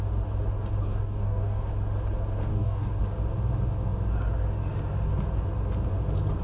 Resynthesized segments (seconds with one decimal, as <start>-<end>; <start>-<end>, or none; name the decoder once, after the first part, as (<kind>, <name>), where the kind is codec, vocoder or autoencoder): 0.8-1.7 (codec, DAC); 2.5-3.0